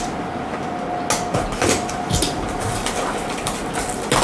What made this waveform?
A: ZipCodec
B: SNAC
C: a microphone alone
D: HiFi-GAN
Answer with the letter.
C